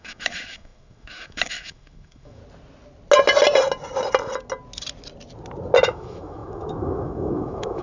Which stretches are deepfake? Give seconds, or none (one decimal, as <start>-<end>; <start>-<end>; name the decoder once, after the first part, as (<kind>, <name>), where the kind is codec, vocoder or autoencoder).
0.0-2.4 (autoencoder, DAC-VAE); 5.8-7.8